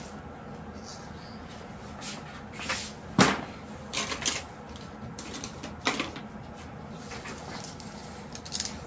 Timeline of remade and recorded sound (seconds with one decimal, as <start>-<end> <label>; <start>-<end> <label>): 0.0-8.9 recorded